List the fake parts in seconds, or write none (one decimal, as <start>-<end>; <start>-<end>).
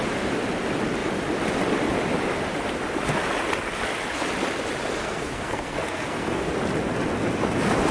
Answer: 5.0-6.5